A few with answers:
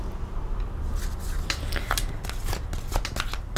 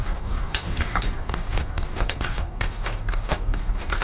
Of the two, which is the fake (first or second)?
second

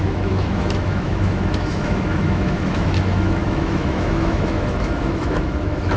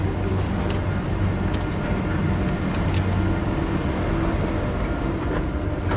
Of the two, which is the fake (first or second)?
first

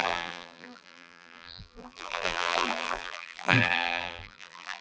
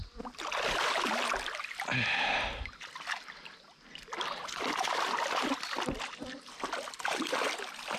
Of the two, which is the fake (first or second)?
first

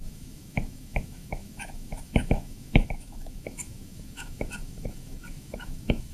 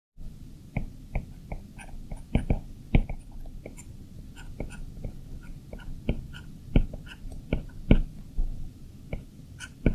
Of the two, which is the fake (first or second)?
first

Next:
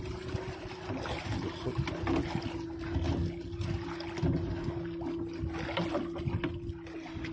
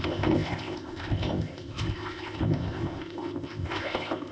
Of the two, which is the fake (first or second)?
second